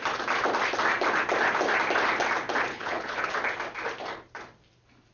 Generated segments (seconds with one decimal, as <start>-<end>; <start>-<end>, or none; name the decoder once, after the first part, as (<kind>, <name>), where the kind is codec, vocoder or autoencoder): 2.7-3.3 (codec, HILCodec)